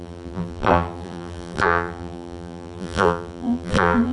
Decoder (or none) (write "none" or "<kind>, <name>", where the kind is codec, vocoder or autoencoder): vocoder, BigVGAN v2